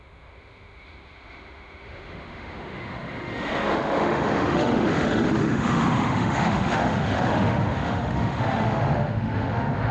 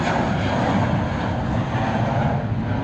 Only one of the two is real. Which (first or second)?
second